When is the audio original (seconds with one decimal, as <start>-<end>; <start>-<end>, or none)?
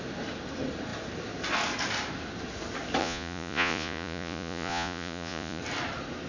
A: 0.0-3.0; 5.6-6.3